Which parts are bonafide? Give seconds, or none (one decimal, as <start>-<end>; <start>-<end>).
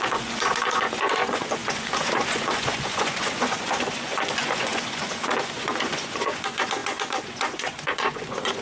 none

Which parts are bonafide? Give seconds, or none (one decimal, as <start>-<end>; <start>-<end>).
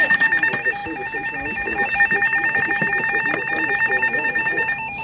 0.0-5.0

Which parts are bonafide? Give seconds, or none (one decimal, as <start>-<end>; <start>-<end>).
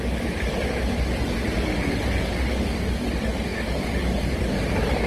0.0-5.1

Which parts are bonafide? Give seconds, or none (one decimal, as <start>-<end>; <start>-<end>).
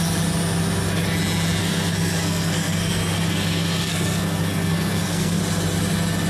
0.0-1.6; 5.4-6.3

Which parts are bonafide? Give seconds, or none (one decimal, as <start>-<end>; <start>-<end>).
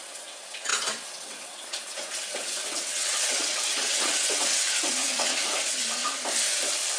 6.0-7.0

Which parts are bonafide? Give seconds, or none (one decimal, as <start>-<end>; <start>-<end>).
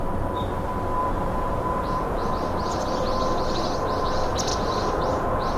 0.0-1.0; 2.3-4.5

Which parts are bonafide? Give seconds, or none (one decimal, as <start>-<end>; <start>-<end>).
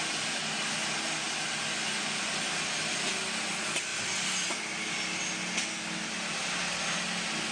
0.0-7.5